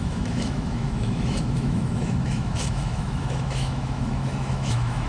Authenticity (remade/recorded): remade